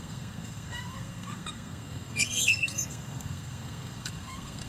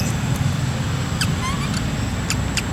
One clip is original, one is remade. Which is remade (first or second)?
first